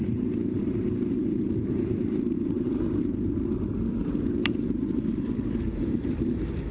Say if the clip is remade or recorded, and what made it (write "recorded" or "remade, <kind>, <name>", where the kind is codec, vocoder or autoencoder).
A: remade, vocoder, BigVGAN v2